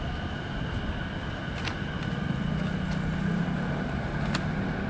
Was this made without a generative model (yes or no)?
yes